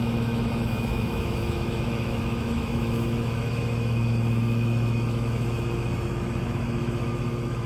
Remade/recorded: remade